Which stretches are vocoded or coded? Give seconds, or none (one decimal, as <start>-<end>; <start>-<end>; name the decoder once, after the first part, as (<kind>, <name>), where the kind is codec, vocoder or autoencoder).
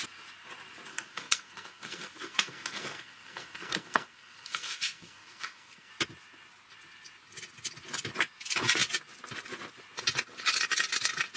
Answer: 0.9-5.9 (codec, SNAC)